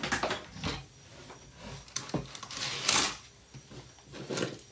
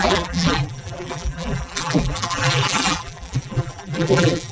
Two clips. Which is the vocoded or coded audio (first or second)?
second